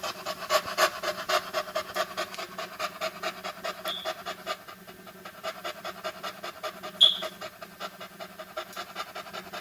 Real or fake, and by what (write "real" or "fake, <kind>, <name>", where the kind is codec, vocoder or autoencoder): real